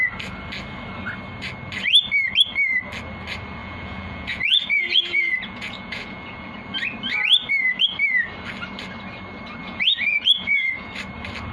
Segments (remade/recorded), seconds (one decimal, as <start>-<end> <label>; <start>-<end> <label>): 0.0-3.6 recorded; 3.6-6.5 remade; 6.5-9.6 recorded; 9.6-10.9 remade; 10.9-11.5 recorded

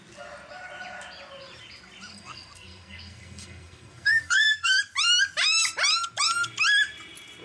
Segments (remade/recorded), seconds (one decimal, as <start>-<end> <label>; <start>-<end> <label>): 0.0-2.1 recorded; 2.1-4.8 remade; 4.8-7.4 recorded